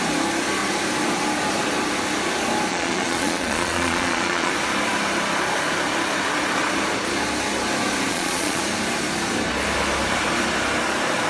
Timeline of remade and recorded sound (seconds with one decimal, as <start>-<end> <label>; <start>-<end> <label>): 0.0-2.7 recorded; 2.7-4.5 remade; 4.5-8.1 recorded; 8.1-8.6 remade; 8.6-11.3 recorded